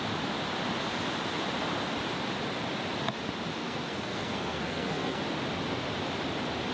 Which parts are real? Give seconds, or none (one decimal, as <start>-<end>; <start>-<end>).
0.0-3.6; 5.2-6.7

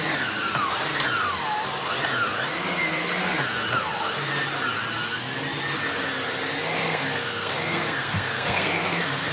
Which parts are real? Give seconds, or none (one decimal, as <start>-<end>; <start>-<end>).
0.0-6.8